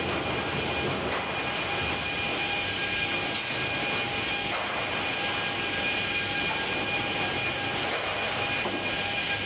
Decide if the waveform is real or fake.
real